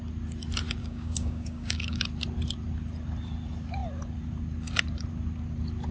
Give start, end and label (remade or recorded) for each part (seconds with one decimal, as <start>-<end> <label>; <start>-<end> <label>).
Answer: 0.0-0.8 recorded; 0.8-2.0 remade; 2.0-5.9 recorded